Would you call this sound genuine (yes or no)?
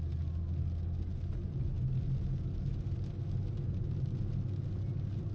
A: yes